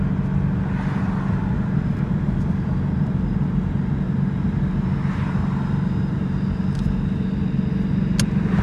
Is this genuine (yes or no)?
yes